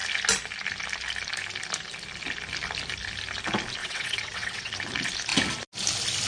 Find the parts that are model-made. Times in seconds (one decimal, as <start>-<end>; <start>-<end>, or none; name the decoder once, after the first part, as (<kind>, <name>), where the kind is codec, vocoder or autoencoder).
3.8-4.7 (vocoder, WaveNeXt)